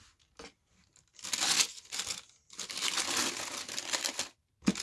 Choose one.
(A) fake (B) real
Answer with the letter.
B